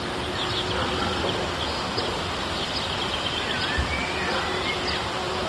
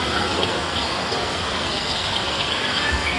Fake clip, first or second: second